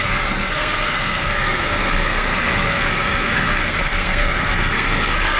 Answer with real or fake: fake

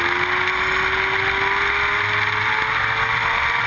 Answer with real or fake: real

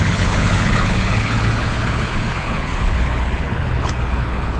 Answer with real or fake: fake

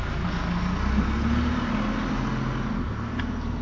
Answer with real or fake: real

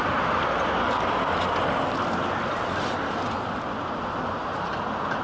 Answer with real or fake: real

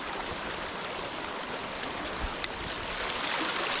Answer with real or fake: real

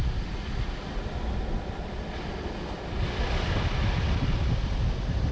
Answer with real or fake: real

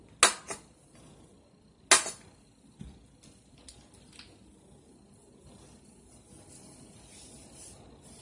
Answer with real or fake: real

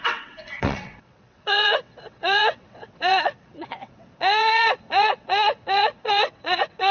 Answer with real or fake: fake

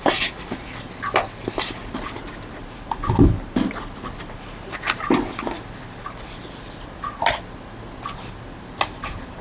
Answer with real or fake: real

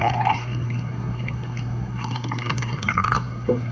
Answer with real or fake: fake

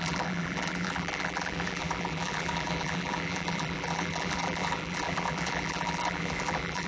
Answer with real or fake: fake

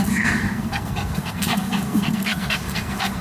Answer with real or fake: fake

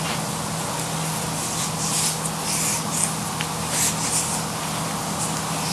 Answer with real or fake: real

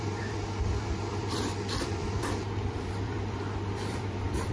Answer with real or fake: fake